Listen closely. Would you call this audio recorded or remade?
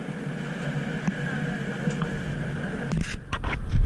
recorded